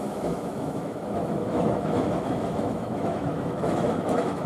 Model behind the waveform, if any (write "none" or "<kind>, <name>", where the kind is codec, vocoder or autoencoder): autoencoder, DAC-VAE